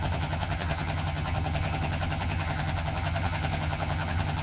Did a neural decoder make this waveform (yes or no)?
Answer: yes